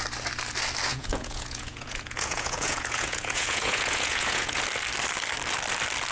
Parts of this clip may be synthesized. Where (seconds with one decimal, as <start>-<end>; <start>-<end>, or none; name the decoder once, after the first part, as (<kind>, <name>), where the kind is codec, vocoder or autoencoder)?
0.9-4.6 (vocoder, Vocos)